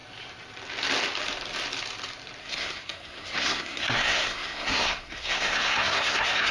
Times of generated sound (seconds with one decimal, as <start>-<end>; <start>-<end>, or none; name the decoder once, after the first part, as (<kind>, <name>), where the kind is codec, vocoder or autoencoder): 2.4-6.5 (codec, SNAC)